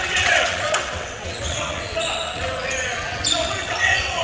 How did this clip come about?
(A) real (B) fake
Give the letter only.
B